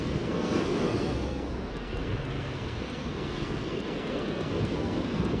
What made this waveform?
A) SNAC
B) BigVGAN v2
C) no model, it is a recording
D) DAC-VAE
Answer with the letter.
A